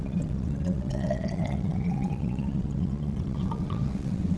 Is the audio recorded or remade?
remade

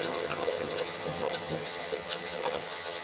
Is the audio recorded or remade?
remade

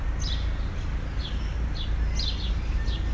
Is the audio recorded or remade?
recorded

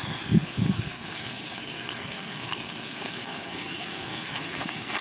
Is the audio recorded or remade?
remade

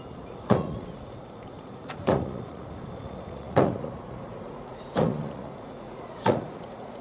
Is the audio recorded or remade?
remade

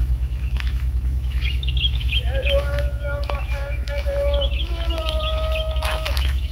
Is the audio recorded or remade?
remade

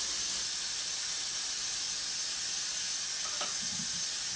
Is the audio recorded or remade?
recorded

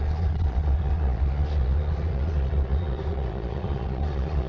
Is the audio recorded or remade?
remade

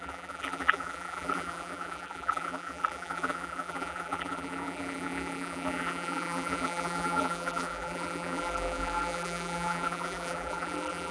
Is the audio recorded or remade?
remade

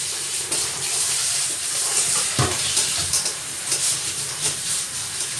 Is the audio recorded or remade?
remade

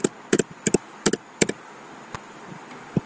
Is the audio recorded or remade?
recorded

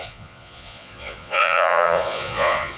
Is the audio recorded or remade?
remade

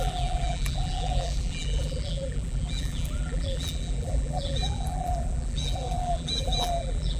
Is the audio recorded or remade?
remade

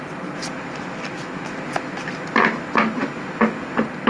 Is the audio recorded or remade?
recorded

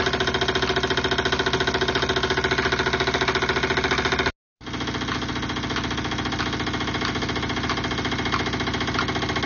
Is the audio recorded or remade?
recorded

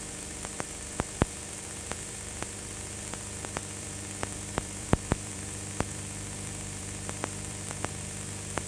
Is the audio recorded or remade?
remade